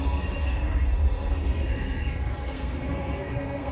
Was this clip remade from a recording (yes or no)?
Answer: yes